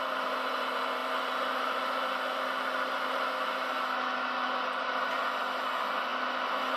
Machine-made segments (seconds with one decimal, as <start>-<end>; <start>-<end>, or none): none